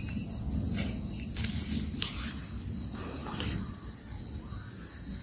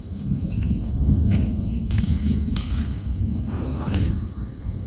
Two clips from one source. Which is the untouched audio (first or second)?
first